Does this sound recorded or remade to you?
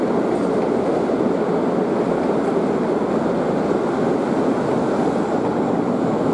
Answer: recorded